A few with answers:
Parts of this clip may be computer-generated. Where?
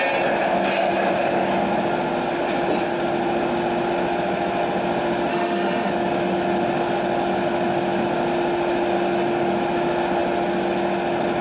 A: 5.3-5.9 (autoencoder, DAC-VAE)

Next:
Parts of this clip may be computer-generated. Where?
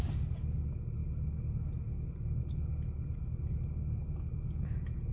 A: none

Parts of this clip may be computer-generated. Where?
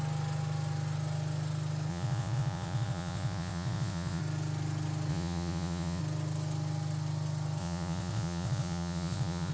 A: 1.9-4.2 (vocoder, Vocos); 5.1-6.0; 7.6-9.5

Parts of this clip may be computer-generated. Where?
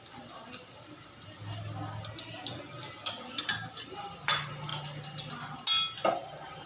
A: none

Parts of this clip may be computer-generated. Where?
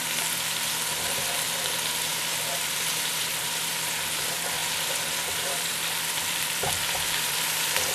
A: 0.0-4.6 (vocoder, BigVGAN v2); 5.3-7.9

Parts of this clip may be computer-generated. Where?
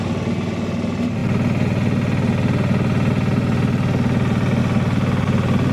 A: none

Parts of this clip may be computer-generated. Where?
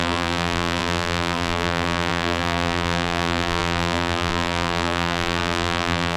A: 0.0-6.2 (vocoder, BigVGAN v2)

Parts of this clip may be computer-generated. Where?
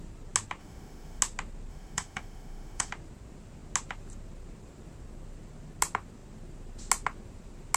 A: 0.6-1.2 (autoencoder, DAC-VAE); 1.7-2.9